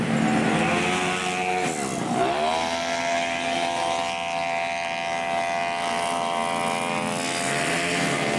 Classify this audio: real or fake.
real